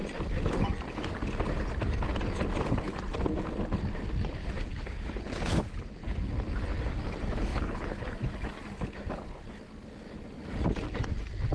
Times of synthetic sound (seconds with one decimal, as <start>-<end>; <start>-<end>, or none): 4.4-6.3; 7.5-8.3